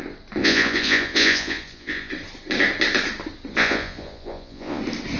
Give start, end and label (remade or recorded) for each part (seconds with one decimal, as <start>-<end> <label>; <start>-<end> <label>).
0.0-0.4 recorded; 0.4-2.1 remade; 2.1-3.5 recorded; 3.5-4.8 remade; 4.8-5.2 recorded